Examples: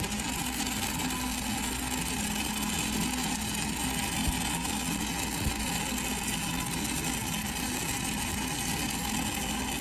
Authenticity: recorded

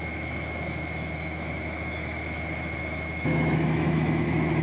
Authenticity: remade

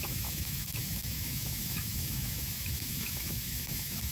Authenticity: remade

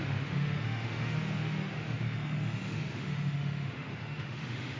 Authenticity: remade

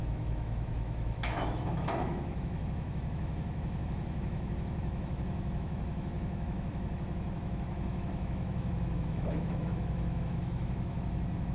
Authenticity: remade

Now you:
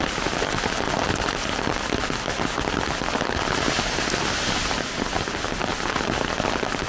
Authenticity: recorded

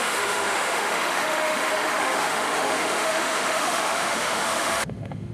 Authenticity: remade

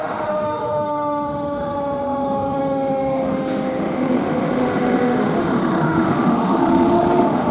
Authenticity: remade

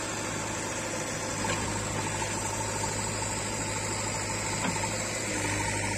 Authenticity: recorded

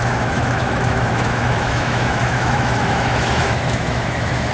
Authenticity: remade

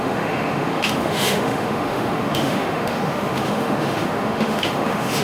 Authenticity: remade